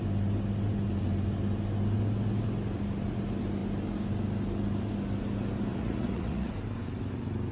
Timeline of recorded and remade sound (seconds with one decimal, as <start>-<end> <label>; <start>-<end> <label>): 0.0-5.7 recorded; 5.7-6.5 remade; 6.5-7.5 recorded